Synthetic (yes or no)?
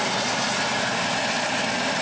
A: no